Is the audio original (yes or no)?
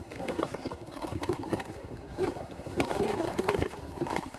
no